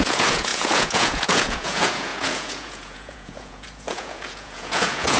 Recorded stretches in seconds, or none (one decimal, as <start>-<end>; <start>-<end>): none